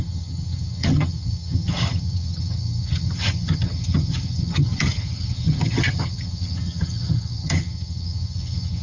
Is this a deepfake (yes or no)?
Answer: yes